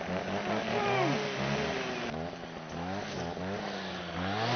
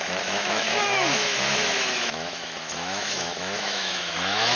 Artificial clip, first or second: second